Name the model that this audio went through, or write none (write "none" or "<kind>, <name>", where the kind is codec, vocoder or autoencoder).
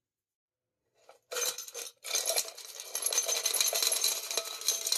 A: none